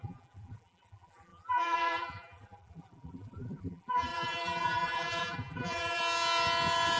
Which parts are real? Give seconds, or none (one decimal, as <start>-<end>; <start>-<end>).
6.0-7.0

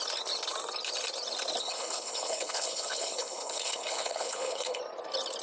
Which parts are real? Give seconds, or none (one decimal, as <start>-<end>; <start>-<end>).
0.0-1.6; 4.8-5.4

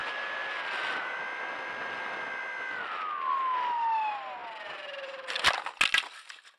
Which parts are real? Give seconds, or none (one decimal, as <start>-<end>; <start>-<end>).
1.1-4.4; 5.3-6.6

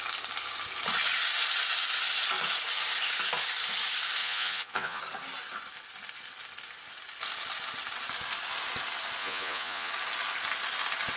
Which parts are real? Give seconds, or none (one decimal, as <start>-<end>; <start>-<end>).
0.0-4.2; 5.0-9.2; 9.9-11.2

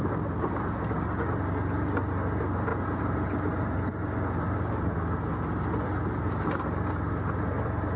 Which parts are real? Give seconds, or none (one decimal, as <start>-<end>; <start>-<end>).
0.0-8.0

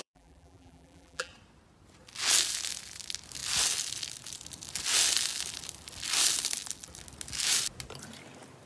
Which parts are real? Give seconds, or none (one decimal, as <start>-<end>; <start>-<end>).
1.3-8.7

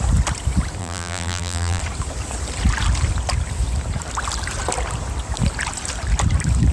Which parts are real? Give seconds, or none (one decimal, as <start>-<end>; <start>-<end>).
0.0-0.8; 1.8-6.7